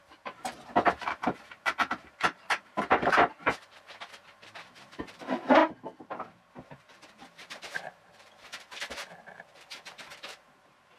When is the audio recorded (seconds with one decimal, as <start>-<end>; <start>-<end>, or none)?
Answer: none